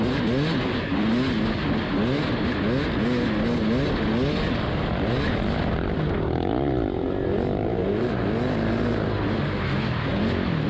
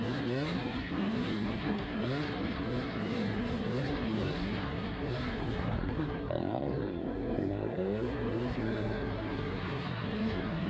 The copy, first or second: second